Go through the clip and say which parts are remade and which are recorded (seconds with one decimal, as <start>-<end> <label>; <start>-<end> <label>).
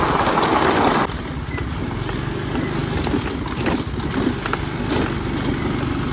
0.0-6.1 recorded